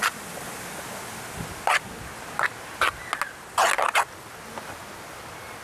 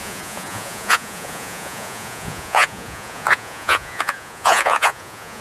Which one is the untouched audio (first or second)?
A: first